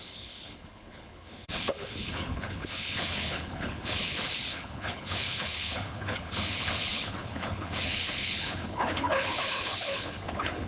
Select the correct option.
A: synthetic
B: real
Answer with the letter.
A